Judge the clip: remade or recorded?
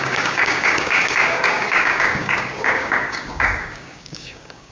remade